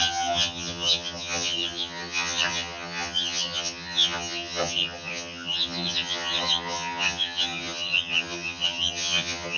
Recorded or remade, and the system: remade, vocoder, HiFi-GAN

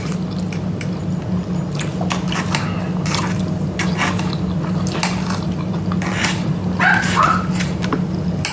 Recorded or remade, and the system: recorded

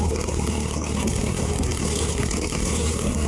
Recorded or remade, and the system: remade, codec, SNAC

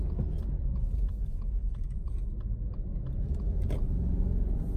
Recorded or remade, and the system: recorded